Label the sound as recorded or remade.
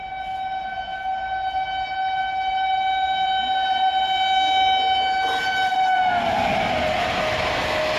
recorded